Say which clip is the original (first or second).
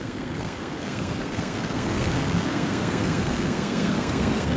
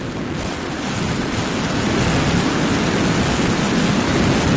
second